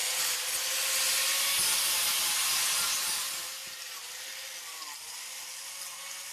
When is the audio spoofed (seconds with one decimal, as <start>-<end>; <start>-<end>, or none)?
none